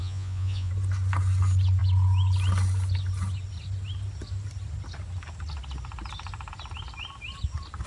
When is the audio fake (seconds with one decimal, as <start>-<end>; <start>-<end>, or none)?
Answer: 0.0-0.7